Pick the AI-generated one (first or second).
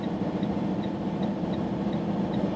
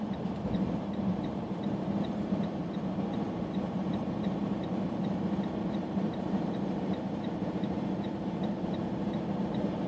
second